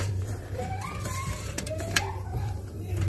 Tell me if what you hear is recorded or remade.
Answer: remade